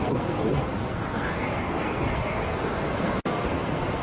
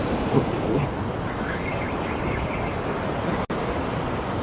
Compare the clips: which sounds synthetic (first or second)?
first